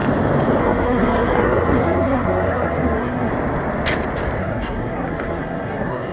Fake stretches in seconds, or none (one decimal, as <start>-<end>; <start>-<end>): 0.6-3.3; 4.4-6.1